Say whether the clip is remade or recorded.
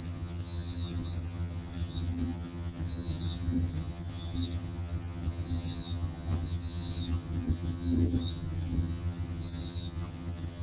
remade